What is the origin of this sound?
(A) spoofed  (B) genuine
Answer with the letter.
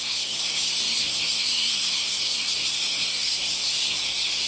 A